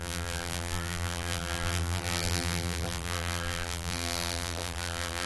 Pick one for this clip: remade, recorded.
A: remade